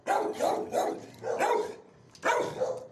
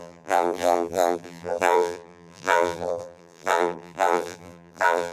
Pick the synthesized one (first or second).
second